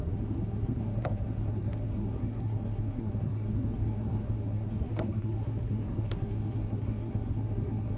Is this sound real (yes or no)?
no